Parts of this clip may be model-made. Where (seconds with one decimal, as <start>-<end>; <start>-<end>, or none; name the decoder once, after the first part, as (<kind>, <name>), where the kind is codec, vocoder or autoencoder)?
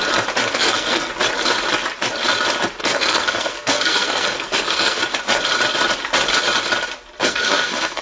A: 0.5-1.1 (codec, SNAC); 2.8-5.0; 7.2-8.0